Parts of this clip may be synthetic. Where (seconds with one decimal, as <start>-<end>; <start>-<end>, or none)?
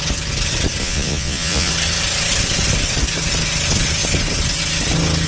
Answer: 0.8-1.7